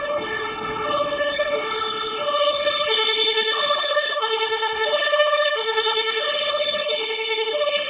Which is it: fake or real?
fake